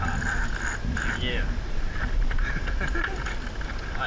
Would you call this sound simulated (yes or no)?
no